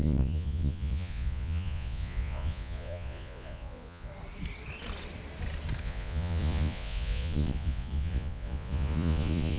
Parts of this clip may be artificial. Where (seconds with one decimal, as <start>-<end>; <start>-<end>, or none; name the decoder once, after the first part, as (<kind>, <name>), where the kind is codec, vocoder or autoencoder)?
0.0-4.1 (vocoder, Vocos); 5.8-9.6